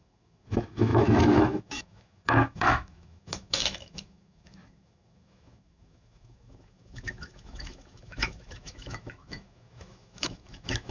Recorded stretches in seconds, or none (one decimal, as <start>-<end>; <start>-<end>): none